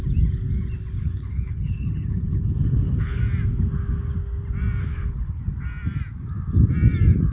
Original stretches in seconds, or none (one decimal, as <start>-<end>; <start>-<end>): 0.0-1.0; 3.2-4.8; 5.4-7.3